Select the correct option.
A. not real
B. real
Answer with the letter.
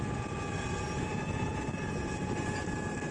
B